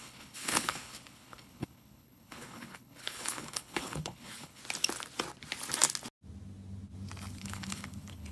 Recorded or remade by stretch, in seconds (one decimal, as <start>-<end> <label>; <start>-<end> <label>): 0.0-4.6 remade; 4.6-7.3 recorded; 7.3-8.3 remade